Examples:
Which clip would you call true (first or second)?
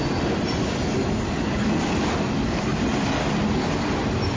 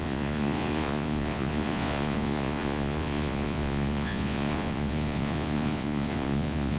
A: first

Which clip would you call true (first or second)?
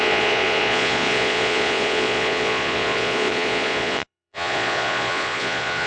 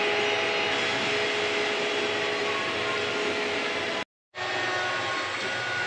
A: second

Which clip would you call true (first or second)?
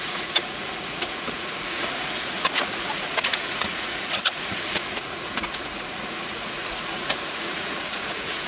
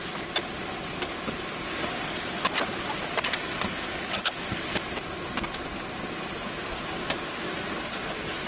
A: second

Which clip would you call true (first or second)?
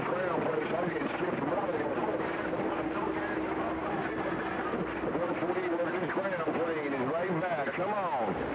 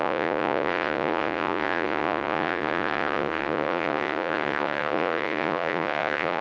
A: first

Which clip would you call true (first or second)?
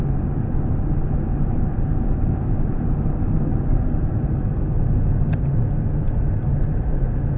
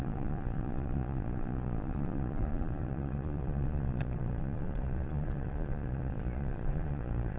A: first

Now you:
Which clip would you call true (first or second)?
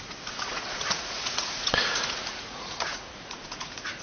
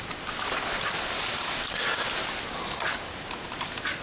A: second